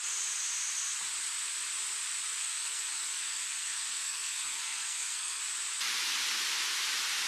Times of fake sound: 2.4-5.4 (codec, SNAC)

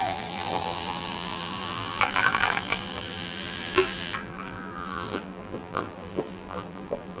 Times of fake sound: 0.0-7.2 (vocoder, BigVGAN v2)

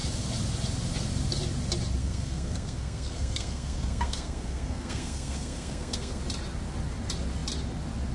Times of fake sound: 2.0-6.2 (codec, SNAC)

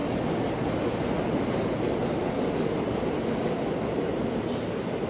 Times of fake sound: 1.0-2.0 (vocoder, BigVGAN v2); 3.9-5.1

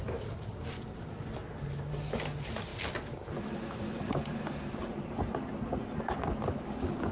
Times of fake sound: none